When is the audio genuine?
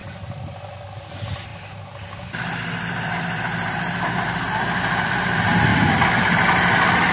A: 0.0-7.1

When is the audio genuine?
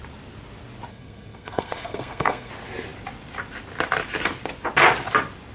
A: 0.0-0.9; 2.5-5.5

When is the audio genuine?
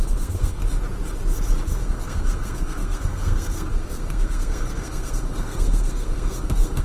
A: 0.6-1.7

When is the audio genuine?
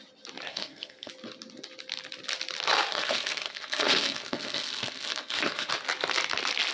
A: 0.0-0.5; 1.1-2.9; 5.7-6.7